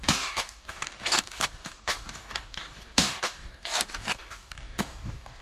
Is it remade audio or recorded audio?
remade